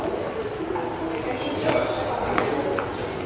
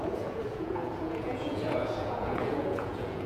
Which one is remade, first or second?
second